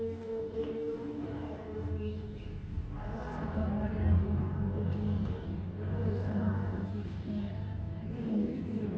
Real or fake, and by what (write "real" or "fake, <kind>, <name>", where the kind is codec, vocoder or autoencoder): fake, codec, DAC